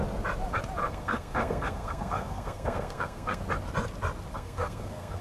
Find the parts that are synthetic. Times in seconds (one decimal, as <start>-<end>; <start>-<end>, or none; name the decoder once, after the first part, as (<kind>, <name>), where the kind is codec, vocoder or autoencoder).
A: 0.8-3.4 (codec, SNAC); 4.3-5.2